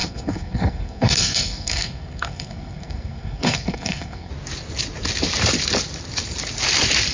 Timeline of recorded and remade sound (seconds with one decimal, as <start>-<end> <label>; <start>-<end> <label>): 0.0-4.3 remade; 4.3-7.1 recorded